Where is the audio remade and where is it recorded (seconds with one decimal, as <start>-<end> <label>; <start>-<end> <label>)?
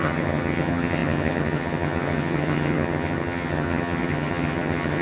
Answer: 0.0-5.0 remade